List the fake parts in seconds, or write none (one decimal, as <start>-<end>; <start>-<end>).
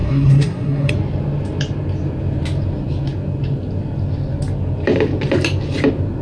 0.0-0.9